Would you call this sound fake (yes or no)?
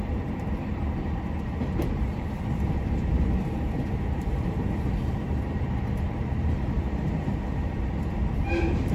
yes